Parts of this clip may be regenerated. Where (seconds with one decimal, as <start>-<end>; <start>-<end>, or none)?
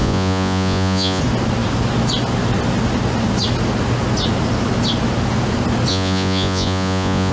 0.0-1.2; 5.9-7.3